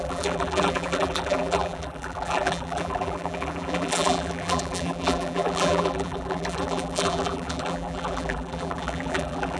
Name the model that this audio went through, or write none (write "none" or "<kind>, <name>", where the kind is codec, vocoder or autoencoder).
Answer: vocoder, BigVGAN v2